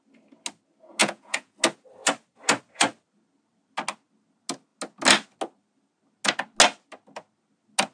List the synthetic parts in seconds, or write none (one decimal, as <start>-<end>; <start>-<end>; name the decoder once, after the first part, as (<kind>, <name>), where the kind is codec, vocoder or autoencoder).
1.0-1.6 (vocoder, Vocos)